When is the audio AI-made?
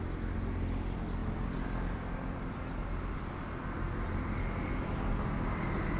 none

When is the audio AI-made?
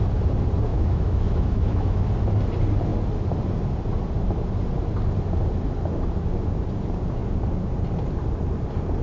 0.7-2.1 (autoencoder, DAC-VAE)